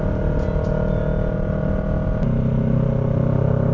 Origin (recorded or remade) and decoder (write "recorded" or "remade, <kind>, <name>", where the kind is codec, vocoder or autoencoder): recorded